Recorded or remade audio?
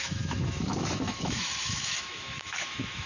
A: remade